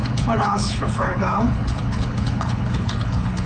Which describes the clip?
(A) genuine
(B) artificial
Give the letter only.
B